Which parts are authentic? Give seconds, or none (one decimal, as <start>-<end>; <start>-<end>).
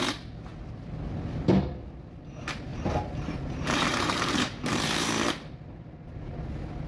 0.0-2.7; 6.4-6.9